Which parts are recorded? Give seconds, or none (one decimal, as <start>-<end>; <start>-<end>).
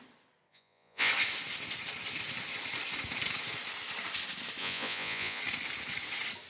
0.0-0.5; 1.1-4.6; 5.4-6.5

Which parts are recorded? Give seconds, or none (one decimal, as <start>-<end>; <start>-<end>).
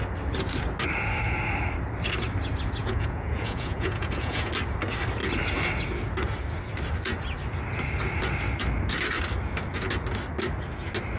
0.0-2.8; 4.5-11.2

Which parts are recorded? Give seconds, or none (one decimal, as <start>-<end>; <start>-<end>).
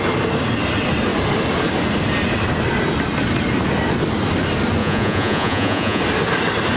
0.0-4.8; 6.0-6.8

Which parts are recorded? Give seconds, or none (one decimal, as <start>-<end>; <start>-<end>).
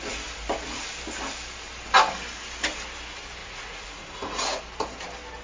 0.0-3.4; 4.6-5.4